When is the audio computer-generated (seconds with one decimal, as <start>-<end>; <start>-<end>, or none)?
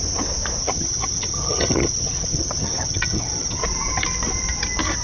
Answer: 0.6-3.6